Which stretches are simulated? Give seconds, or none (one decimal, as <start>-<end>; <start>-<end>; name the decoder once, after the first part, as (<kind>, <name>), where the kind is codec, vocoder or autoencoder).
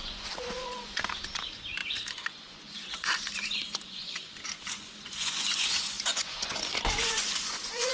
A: 0.0-7.9 (vocoder, Vocos)